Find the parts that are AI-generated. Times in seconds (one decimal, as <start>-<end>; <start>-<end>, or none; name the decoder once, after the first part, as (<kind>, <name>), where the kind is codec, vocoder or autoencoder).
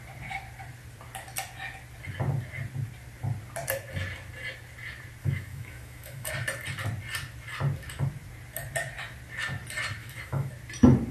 5.2-6.3 (autoencoder, DAC-VAE); 10.0-10.5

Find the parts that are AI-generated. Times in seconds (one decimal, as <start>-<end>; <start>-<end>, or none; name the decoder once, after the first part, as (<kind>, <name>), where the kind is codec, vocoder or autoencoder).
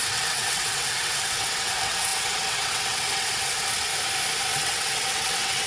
0.0-3.9 (vocoder, WaveNeXt); 4.5-5.7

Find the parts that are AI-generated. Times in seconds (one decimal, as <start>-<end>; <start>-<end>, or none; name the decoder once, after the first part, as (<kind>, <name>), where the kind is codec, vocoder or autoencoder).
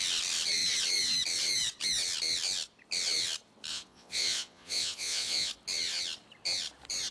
3.7-5.5 (vocoder, Vocos)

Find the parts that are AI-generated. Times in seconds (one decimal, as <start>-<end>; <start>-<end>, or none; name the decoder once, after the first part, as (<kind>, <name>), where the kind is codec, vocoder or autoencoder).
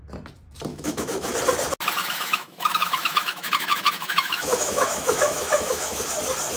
0.7-1.3 (autoencoder, DAC-VAE); 2.0-6.0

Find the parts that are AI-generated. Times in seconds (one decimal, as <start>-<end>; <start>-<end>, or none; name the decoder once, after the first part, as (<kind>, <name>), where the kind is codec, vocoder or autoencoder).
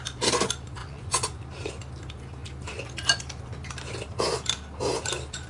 0.8-1.4 (vocoder, Vocos)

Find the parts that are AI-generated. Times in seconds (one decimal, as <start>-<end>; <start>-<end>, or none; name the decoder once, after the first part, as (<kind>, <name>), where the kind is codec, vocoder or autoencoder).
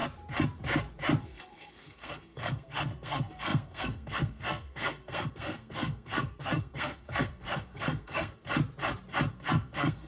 1.2-8.4 (codec, SNAC); 9.3-10.1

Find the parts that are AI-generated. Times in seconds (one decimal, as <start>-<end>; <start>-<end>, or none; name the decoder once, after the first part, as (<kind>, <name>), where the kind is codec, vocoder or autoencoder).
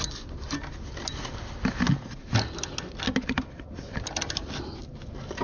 none